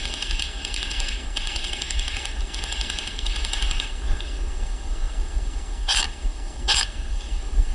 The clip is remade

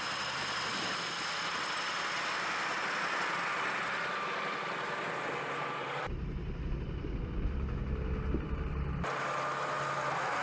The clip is recorded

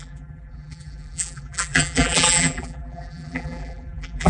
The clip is remade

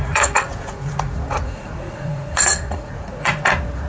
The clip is remade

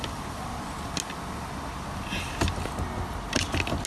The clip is recorded